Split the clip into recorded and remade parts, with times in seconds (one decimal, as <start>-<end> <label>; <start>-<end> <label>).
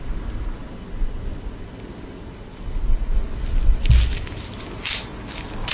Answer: 0.0-5.7 recorded